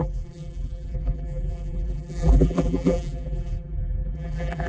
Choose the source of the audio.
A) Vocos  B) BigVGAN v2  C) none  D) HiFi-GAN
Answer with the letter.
B